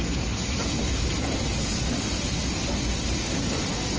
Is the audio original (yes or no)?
yes